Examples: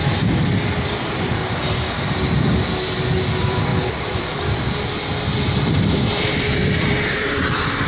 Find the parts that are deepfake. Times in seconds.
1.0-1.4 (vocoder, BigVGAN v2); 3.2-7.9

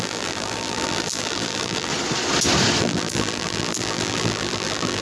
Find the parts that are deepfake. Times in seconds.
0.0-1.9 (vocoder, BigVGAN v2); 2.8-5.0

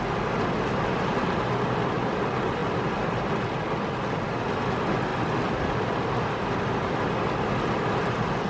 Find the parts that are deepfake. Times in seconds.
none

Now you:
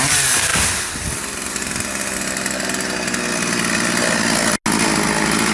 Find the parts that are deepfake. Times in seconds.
none

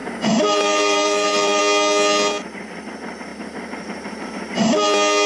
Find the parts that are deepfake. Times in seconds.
0.0-1.6 (vocoder, BigVGAN v2); 3.3-4.3

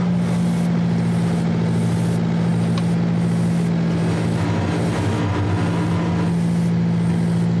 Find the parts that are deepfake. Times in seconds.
none

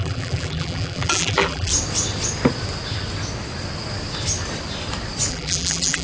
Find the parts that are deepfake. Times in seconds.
0.0-1.7 (vocoder, BigVGAN v2); 5.3-6.0

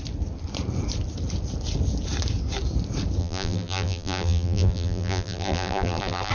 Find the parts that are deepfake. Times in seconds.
3.2-6.3 (vocoder, BigVGAN v2)